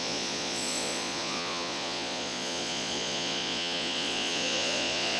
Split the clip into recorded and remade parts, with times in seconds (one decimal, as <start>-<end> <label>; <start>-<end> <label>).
0.0-5.2 remade